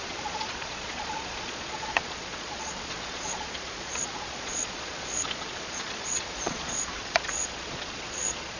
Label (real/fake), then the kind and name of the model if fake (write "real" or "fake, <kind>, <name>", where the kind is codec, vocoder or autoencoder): fake, vocoder, Vocos